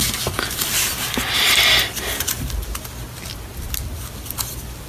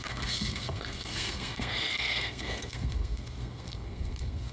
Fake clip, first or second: second